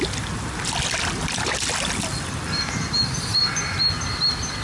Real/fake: real